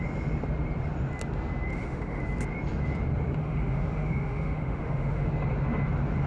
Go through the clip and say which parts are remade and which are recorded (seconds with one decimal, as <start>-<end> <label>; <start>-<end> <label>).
0.0-1.7 recorded; 1.7-2.2 remade; 2.2-3.4 recorded; 3.4-5.3 remade; 5.3-6.3 recorded